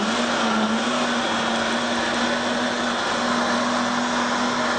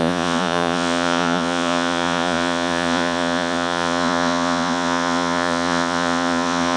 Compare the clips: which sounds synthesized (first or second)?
second